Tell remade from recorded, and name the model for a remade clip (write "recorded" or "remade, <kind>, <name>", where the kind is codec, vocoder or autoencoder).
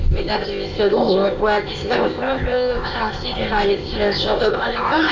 remade, codec, ZipCodec